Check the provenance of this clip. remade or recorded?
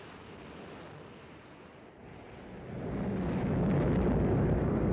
recorded